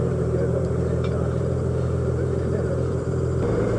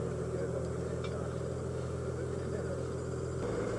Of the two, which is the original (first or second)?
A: second